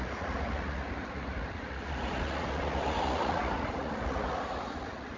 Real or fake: fake